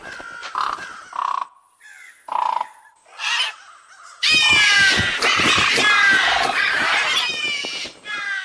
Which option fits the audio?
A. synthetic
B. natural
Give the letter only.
B